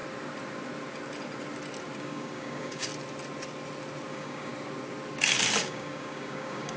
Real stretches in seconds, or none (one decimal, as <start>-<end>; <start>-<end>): 0.0-2.0; 2.9-4.1; 4.5-5.6